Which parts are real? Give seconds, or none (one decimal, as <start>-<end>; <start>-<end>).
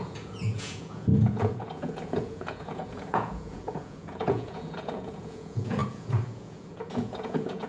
none